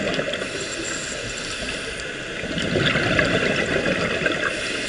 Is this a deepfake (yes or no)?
no